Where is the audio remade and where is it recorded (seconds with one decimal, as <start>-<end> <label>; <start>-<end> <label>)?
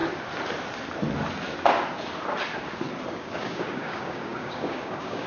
0.0-3.1 recorded; 3.1-5.3 remade